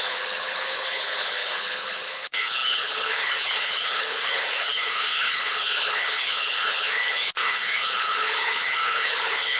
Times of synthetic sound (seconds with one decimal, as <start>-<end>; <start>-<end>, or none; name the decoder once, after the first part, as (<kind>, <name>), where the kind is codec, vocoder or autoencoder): 0.0-9.6 (codec, HILCodec)